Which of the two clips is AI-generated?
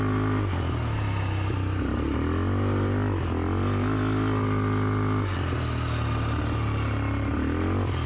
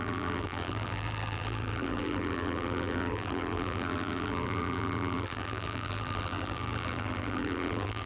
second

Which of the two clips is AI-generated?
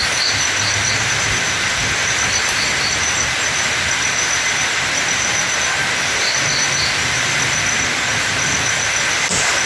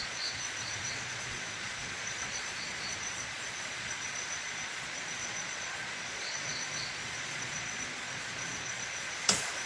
second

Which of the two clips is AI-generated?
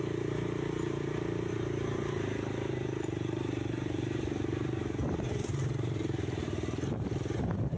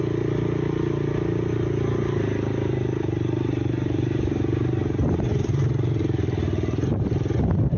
first